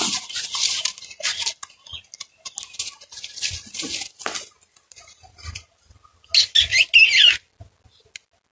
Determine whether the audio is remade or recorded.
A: recorded